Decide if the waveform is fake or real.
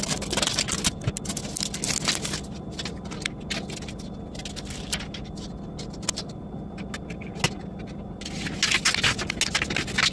real